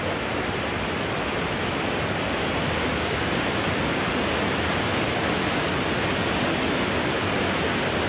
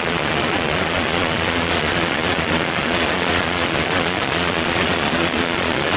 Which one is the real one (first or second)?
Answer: first